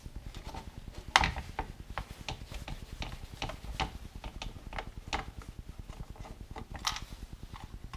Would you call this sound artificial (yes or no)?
no